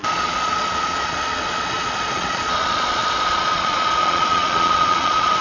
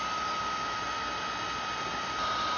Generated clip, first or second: first